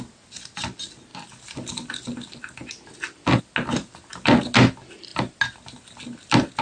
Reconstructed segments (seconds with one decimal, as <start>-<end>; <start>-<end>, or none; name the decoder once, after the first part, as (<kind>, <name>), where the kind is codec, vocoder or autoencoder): none